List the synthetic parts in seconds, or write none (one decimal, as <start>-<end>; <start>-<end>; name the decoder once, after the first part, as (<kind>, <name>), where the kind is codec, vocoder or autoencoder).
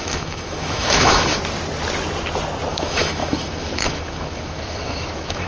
0.0-1.4 (autoencoder, DAC-VAE); 2.7-5.5